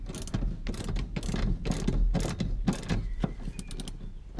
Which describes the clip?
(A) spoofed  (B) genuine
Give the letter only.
B